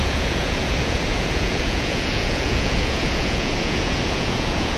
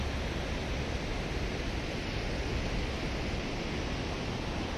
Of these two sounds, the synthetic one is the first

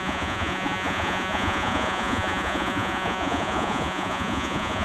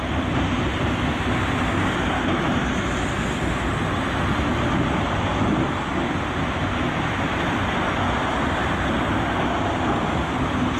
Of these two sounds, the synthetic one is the first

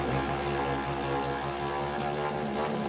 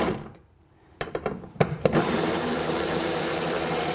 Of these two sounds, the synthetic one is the second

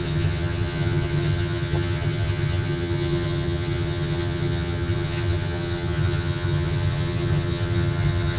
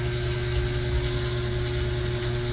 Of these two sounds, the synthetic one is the first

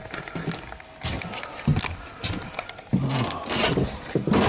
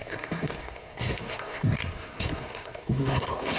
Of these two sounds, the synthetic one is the second